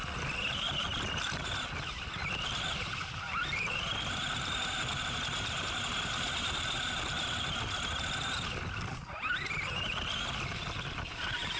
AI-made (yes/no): no